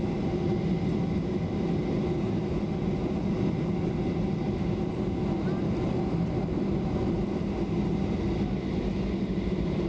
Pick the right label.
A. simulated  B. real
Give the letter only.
B